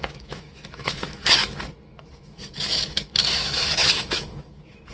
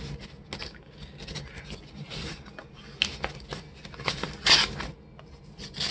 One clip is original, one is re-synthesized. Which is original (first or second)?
second